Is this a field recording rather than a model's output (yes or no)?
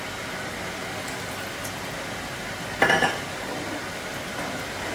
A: yes